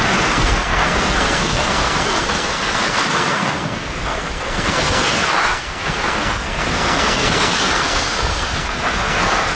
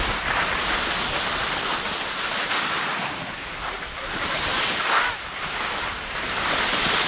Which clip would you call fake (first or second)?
first